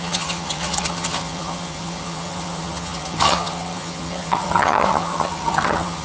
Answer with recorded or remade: remade